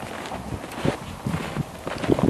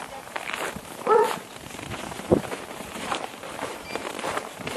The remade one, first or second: second